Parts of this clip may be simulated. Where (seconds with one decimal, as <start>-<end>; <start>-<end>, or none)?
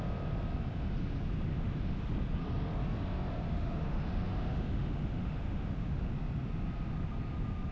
1.5-2.1; 3.5-6.1